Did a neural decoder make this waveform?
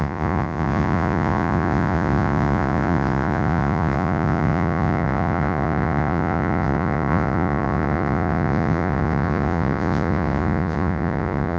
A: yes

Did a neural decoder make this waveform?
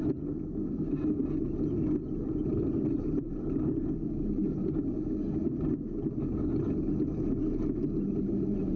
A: no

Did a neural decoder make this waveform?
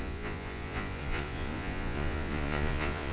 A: yes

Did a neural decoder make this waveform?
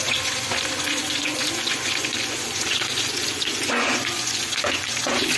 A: yes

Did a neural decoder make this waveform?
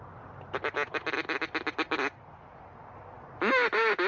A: no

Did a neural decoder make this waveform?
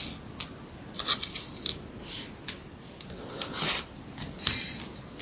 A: no